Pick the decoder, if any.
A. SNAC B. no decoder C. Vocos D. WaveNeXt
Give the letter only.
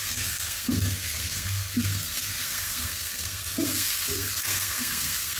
A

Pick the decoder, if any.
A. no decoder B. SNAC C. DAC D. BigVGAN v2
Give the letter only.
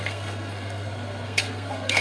B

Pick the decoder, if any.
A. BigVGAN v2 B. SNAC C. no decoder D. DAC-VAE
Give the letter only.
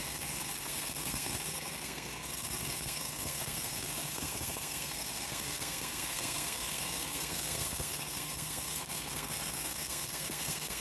B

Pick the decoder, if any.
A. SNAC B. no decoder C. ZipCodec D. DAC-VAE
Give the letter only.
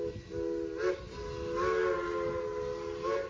B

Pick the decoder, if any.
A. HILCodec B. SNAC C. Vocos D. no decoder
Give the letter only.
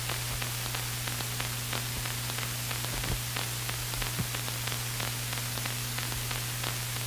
D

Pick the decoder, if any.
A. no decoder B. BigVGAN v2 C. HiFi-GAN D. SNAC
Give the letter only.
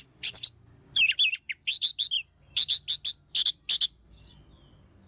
A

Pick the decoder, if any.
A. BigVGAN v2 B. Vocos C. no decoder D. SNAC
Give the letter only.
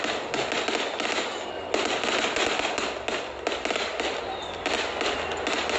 C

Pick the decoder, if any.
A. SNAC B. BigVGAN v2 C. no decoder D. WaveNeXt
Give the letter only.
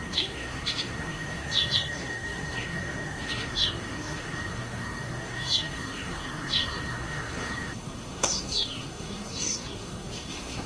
A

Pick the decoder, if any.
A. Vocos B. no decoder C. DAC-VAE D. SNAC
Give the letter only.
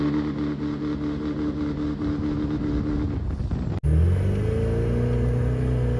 B